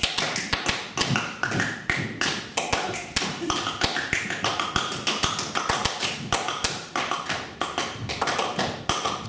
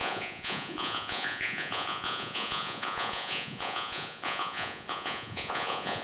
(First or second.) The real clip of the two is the first